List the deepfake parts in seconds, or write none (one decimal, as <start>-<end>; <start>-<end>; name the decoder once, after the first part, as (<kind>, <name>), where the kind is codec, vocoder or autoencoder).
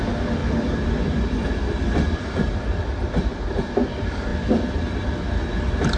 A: 0.4-2.6 (vocoder, BigVGAN v2)